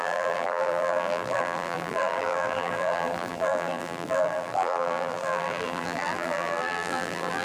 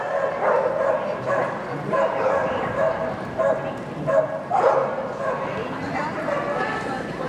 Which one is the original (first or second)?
second